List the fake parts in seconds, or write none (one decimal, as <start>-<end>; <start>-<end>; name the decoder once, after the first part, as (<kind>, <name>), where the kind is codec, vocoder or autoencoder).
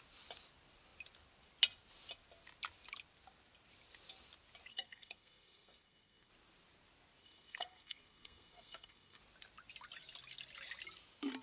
4.7-6.3 (codec, SNAC); 7.2-9.2